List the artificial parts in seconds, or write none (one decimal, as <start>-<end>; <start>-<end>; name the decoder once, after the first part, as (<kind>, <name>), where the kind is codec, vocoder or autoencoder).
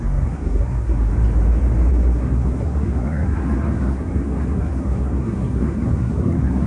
0.0-1.1 (codec, SNAC); 1.9-6.7